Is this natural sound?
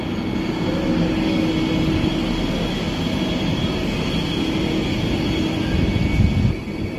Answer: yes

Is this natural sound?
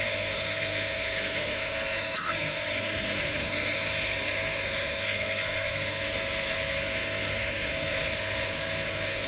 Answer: no